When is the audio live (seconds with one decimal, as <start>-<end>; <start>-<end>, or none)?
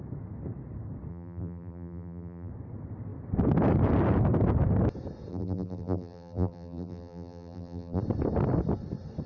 0.0-1.1; 2.5-5.3; 8.0-9.3